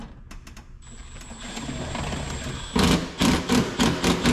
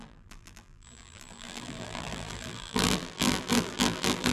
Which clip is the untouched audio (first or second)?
first